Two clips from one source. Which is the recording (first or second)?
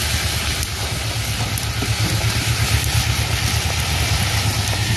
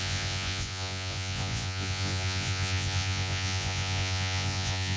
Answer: first